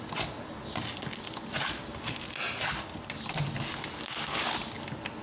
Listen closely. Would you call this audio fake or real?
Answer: real